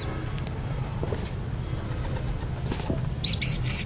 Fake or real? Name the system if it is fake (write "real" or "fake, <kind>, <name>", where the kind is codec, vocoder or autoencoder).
real